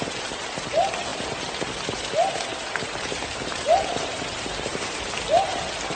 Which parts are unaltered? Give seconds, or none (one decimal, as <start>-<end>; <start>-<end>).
0.0-6.0